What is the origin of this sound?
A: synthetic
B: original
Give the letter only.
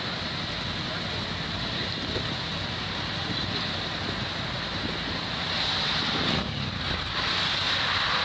B